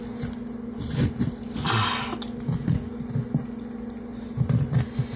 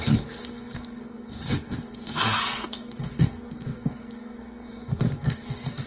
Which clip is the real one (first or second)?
first